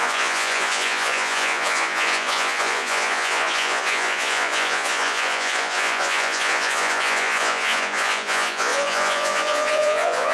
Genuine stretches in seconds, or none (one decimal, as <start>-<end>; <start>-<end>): none